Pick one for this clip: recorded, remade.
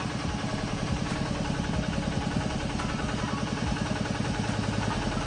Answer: remade